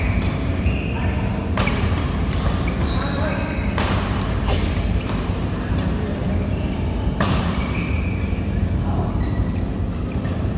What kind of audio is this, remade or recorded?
remade